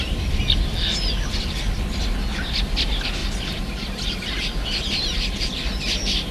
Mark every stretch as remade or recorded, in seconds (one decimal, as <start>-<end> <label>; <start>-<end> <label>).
0.0-6.3 recorded